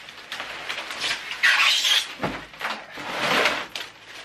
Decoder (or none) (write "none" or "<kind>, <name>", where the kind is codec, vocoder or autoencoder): none